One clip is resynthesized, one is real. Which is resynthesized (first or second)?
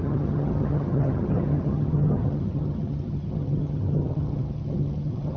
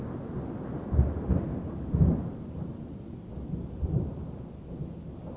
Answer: first